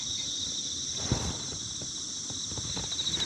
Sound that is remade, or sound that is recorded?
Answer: recorded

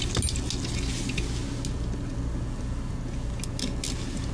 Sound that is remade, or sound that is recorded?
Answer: recorded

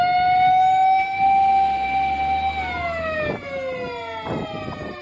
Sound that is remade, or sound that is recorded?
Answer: recorded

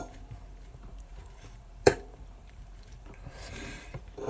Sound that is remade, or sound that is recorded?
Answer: remade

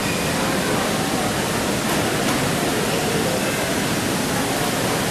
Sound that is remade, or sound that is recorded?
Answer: recorded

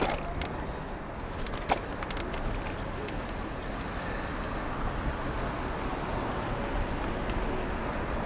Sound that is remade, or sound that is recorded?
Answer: recorded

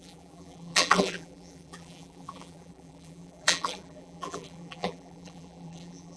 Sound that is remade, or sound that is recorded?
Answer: remade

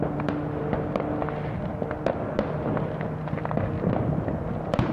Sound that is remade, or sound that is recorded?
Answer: recorded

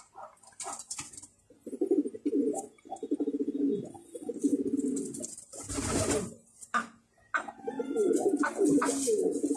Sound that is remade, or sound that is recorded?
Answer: recorded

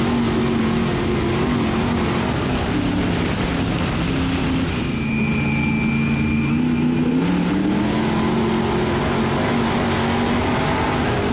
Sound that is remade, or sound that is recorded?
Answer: recorded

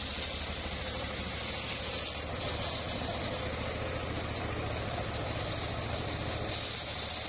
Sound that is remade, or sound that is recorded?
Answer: recorded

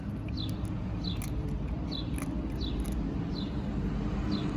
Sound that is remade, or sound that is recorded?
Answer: recorded